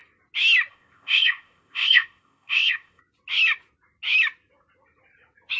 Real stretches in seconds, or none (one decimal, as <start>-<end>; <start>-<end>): 0.0-0.7; 3.0-5.6